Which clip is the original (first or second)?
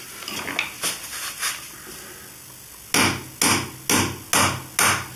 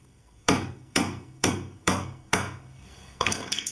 first